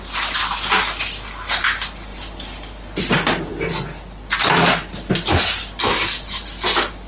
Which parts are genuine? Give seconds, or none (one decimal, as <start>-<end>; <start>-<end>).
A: 0.0-7.1